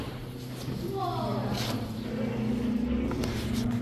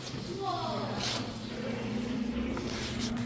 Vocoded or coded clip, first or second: second